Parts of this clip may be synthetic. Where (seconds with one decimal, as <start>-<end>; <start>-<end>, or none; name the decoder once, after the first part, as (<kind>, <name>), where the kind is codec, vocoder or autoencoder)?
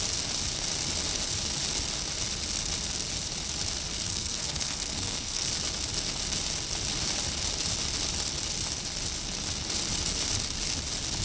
4.1-5.5 (codec, SNAC)